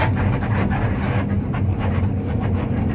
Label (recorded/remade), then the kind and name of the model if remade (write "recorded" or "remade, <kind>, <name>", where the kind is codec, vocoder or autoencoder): recorded